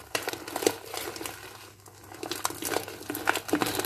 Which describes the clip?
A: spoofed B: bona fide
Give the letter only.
B